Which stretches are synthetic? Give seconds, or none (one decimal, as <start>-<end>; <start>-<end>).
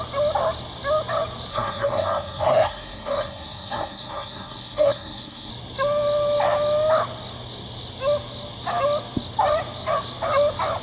1.5-5.5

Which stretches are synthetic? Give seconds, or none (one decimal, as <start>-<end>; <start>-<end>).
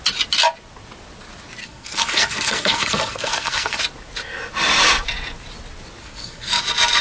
1.6-3.8; 6.0-6.6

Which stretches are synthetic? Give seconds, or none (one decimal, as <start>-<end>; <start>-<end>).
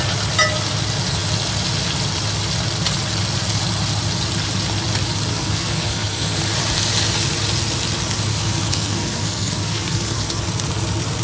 5.3-6.4; 8.3-10.4